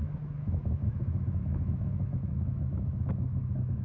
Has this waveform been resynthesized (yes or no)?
yes